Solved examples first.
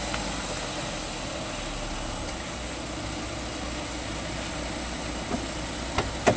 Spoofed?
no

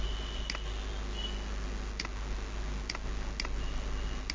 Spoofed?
no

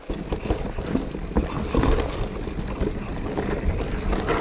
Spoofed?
no